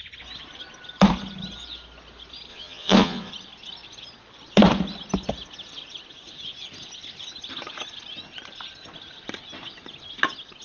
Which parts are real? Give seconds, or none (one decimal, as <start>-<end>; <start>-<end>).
0.0-2.5; 3.3-10.6